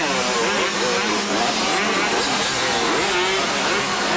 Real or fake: real